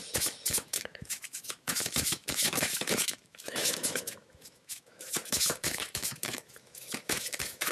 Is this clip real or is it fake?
fake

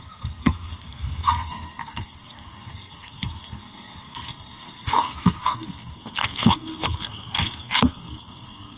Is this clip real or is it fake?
fake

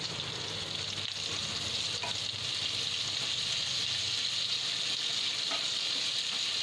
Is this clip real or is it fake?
real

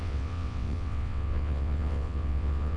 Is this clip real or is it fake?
fake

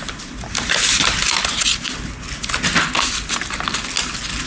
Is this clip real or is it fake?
real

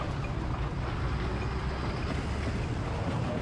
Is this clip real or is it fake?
real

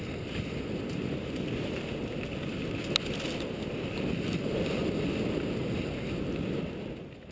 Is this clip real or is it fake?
real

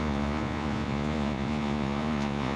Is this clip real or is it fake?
fake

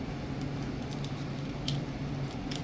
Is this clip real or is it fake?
real